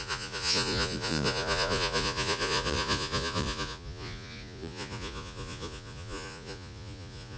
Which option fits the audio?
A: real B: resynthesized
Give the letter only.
B